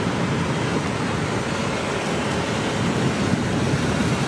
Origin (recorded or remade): recorded